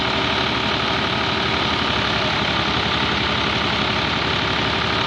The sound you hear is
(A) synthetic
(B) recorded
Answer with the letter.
B